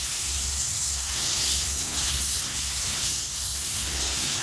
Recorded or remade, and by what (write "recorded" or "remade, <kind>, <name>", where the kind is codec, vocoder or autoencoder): remade, codec, SNAC